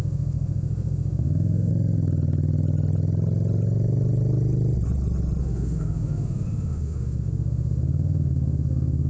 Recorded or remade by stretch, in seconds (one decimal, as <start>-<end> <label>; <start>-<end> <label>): 0.0-1.7 remade; 1.7-5.4 recorded; 5.4-9.1 remade